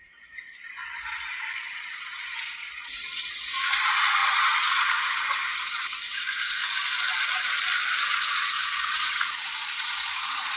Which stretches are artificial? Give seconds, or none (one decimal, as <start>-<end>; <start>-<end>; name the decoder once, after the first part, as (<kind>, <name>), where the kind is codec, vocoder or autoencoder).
0.0-6.6 (vocoder, Vocos); 8.1-10.6